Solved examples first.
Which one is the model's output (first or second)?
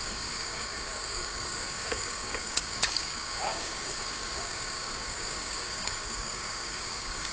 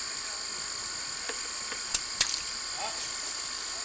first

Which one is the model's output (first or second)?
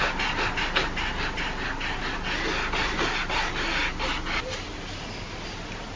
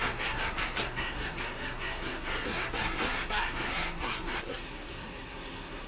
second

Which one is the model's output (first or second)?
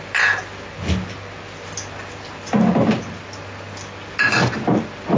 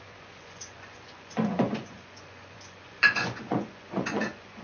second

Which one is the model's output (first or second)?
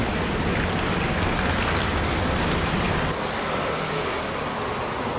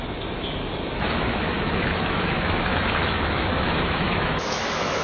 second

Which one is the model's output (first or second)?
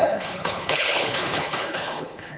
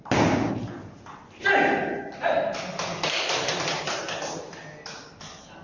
first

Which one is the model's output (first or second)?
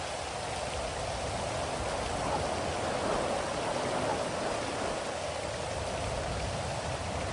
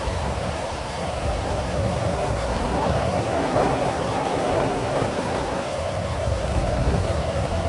second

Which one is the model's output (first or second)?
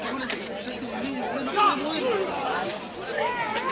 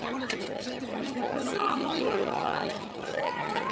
second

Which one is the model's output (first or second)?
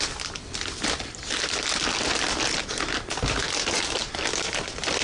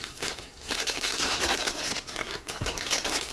second